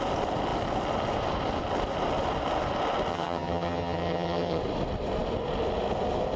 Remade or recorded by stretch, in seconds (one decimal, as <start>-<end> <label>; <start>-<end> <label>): 0.0-3.1 recorded; 3.1-4.6 remade; 4.6-6.4 recorded